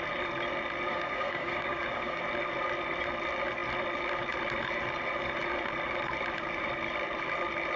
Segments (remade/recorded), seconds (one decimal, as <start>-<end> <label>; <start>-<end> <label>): 0.0-0.9 recorded; 0.9-2.2 remade; 2.2-7.8 recorded